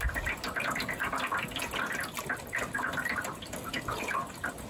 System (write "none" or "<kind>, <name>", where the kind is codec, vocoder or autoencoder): none